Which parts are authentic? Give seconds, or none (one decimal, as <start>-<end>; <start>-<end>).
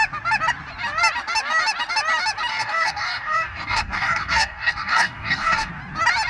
0.0-2.5; 5.7-6.3